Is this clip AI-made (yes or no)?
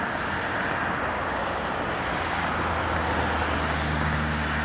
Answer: no